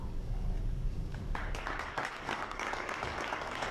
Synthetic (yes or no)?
yes